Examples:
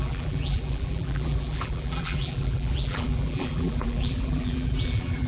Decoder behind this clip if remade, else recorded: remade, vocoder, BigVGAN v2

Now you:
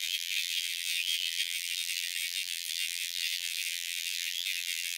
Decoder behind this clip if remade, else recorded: remade, vocoder, BigVGAN v2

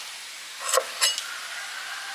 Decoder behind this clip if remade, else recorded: recorded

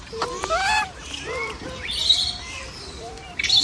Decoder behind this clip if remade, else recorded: remade, vocoder, BigVGAN v2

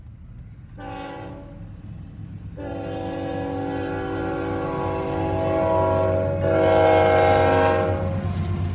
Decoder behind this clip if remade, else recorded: recorded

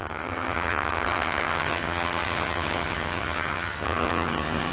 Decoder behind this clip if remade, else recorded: remade, vocoder, HiFi-GAN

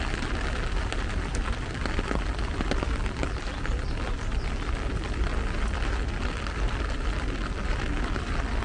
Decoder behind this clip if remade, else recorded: recorded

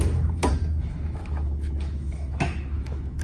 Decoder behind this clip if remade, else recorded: remade, autoencoder, DAC-VAE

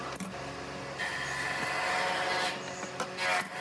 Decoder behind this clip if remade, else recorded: recorded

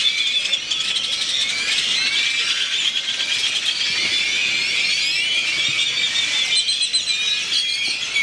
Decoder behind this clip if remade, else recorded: recorded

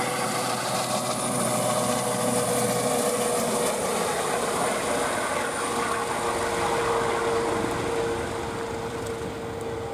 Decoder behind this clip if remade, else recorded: recorded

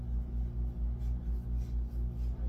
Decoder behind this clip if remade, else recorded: recorded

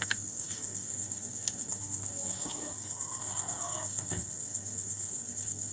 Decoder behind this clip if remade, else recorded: remade, codec, SNAC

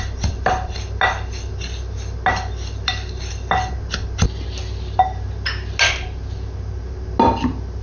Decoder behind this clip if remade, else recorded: recorded